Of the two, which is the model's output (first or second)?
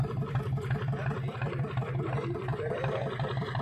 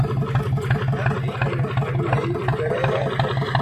first